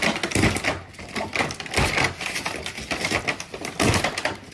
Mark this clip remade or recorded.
recorded